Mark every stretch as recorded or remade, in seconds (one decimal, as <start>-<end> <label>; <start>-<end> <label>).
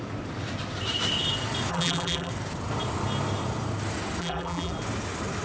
0.0-1.7 recorded; 1.7-2.3 remade; 2.3-4.2 recorded; 4.2-4.7 remade; 4.7-5.4 recorded